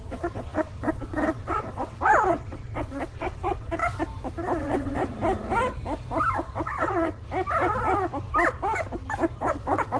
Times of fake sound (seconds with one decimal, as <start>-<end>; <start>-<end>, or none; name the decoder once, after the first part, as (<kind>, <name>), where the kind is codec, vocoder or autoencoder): 0.0-3.8 (vocoder, WaveNeXt); 4.6-5.0; 6.4-7.2; 9.4-10.0